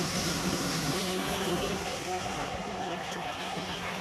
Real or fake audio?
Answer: fake